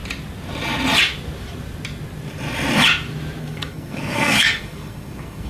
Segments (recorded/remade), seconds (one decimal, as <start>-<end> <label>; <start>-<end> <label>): 0.0-3.4 recorded; 3.4-5.5 remade